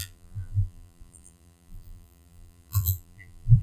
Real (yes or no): no